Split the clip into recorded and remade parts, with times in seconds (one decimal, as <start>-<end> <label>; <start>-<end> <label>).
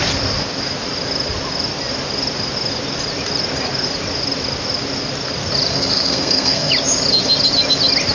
0.0-5.7 recorded; 5.7-6.7 remade; 6.7-8.1 recorded